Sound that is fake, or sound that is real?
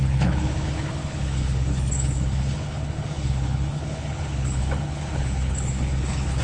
fake